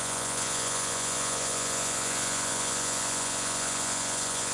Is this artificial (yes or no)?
yes